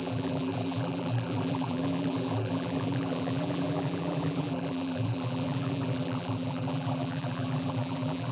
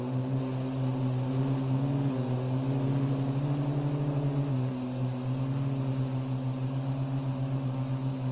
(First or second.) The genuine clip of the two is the second